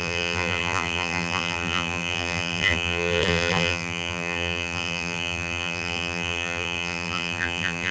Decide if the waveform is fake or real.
fake